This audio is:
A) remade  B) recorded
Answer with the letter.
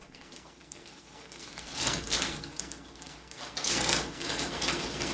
A